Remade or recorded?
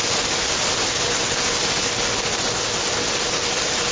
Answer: recorded